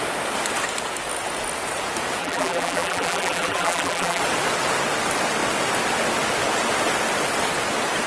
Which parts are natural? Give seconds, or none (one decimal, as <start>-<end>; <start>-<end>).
0.0-2.2; 4.2-8.1